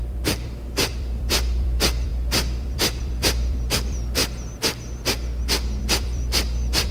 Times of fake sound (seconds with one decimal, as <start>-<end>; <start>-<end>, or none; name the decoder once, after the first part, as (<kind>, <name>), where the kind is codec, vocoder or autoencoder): 0.0-4.2 (vocoder, BigVGAN v2); 5.8-6.9